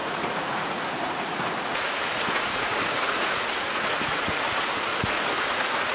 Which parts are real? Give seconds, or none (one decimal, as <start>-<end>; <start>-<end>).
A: 4.9-5.5

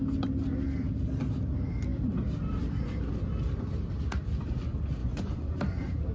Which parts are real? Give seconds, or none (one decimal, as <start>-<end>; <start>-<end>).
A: 0.0-5.0; 5.6-6.1

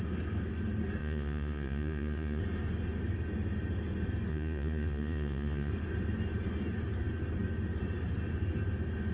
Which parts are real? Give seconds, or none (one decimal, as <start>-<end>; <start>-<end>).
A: 0.0-1.0; 2.4-4.3; 5.7-9.1

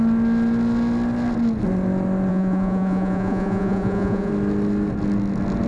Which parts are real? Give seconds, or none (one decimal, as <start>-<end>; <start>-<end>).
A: 0.0-2.3; 4.3-5.7

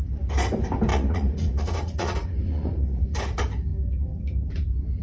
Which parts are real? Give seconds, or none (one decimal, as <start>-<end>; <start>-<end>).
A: 0.0-0.9; 3.0-5.0

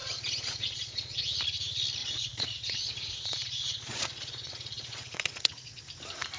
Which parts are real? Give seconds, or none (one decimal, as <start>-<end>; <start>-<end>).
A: 1.2-2.0; 5.8-6.4

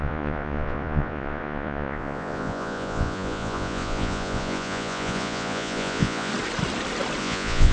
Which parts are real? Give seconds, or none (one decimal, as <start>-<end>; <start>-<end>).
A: 6.3-7.2

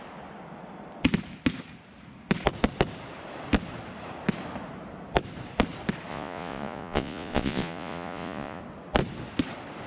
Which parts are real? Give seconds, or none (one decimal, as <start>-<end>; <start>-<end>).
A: 0.0-6.1; 8.6-9.9